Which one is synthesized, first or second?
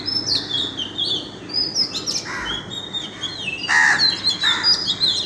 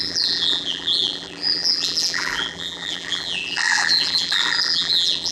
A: second